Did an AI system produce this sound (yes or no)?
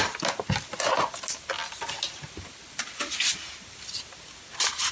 no